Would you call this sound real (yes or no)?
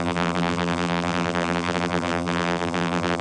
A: no